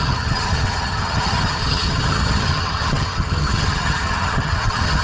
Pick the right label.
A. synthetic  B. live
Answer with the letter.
A